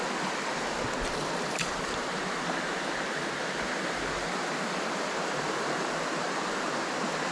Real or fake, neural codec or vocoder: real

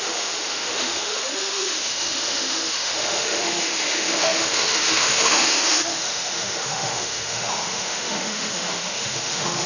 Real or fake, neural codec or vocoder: fake, autoencoder, DAC-VAE